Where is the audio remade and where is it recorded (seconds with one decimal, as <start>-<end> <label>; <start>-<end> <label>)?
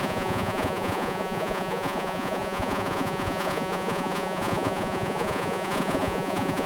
0.0-6.7 remade